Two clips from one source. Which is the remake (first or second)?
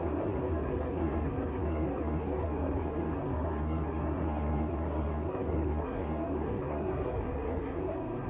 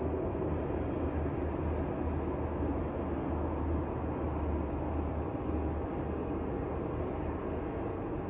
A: first